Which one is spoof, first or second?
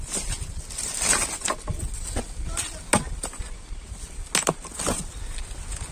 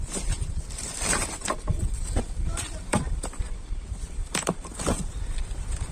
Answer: second